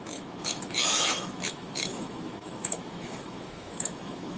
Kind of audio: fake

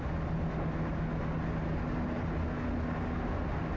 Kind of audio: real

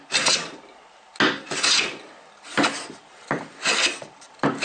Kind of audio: real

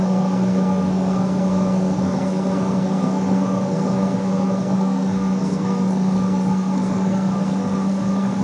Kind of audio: fake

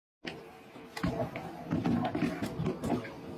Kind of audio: real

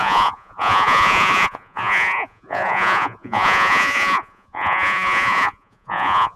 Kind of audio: fake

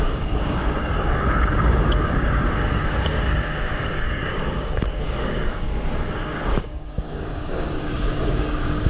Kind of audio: fake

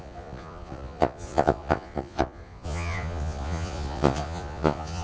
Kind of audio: fake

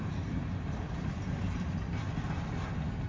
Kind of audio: real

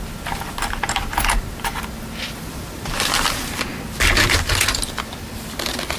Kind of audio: real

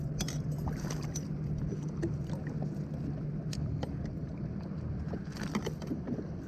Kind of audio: real